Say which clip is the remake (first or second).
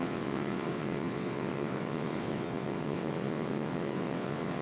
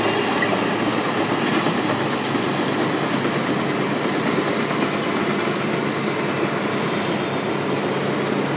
first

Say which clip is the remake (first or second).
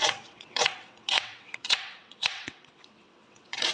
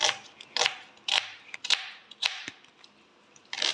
first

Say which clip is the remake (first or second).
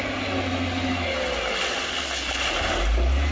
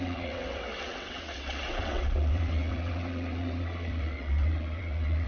second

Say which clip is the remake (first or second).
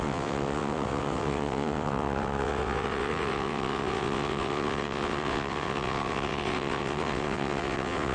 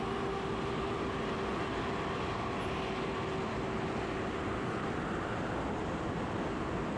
first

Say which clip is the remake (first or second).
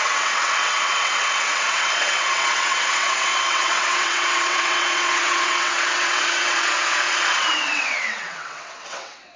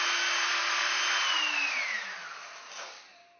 first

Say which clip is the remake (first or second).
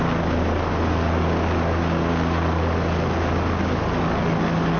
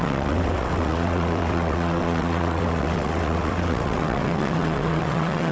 second